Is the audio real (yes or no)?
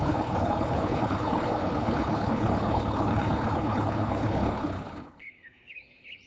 no